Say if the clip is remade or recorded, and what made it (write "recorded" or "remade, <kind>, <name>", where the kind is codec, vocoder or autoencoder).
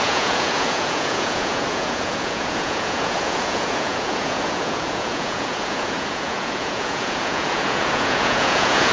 remade, vocoder, Vocos